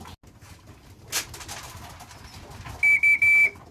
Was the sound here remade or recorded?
recorded